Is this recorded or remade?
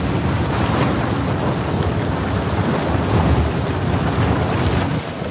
recorded